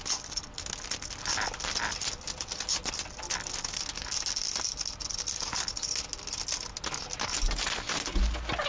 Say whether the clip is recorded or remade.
recorded